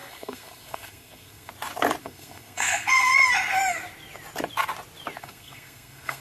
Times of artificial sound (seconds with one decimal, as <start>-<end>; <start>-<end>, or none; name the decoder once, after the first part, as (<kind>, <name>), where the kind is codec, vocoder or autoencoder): 0.0-1.5 (codec, SNAC); 2.0-3.1; 5.2-6.2